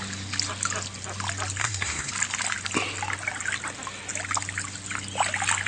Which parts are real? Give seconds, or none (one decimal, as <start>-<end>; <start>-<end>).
0.0-1.6; 2.1-5.7